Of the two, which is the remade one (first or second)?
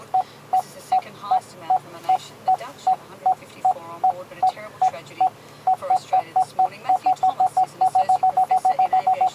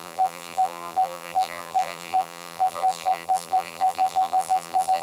second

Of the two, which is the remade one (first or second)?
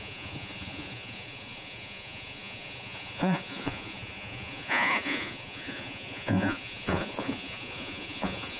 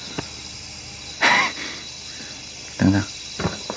first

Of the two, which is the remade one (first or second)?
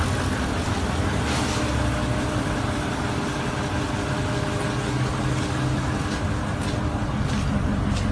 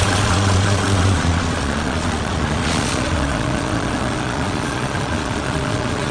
second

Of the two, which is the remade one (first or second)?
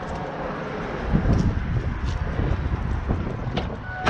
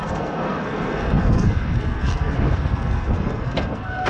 second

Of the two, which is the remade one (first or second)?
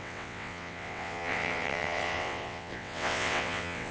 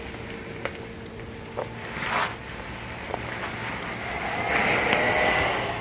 first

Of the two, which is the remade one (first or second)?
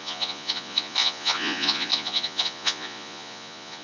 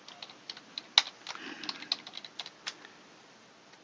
first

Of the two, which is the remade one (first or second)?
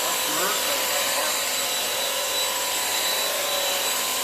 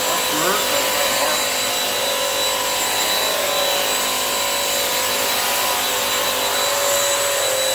first